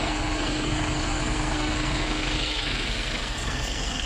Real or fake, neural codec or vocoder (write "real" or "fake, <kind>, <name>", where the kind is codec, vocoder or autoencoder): fake, codec, SNAC